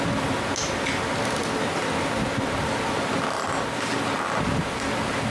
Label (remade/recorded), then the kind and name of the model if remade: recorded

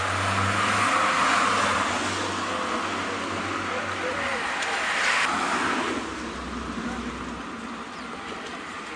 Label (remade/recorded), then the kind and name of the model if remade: recorded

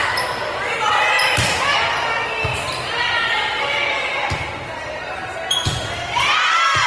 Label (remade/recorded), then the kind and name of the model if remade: recorded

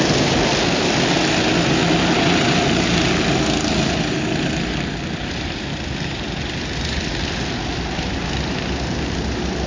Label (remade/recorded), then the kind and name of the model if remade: recorded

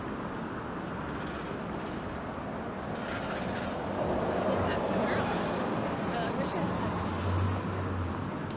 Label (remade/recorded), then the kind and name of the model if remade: recorded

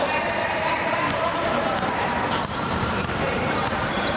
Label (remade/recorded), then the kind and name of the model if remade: remade, vocoder, BigVGAN v2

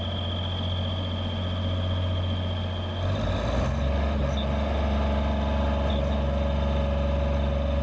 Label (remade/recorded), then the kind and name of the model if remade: recorded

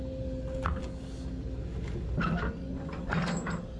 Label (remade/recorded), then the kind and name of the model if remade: recorded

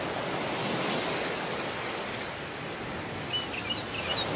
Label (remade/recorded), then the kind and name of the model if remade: recorded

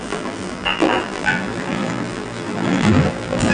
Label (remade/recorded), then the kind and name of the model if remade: remade, vocoder, BigVGAN v2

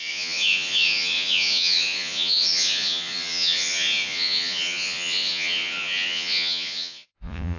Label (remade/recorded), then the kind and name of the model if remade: remade, vocoder, Vocos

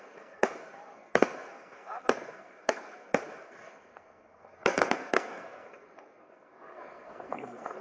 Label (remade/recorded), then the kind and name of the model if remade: remade, codec, SNAC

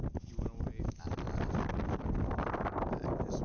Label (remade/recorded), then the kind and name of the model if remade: recorded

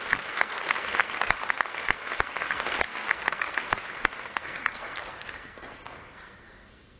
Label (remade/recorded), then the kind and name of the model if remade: remade, codec, SNAC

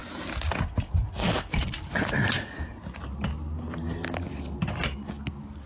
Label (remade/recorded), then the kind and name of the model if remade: recorded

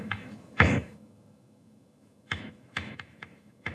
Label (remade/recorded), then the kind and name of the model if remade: remade, autoencoder, DAC-VAE